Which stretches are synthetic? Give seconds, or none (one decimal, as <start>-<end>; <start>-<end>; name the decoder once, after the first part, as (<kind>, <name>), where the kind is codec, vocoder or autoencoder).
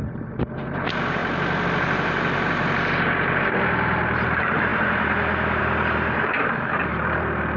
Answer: 0.0-1.2 (vocoder, BigVGAN v2); 1.7-7.6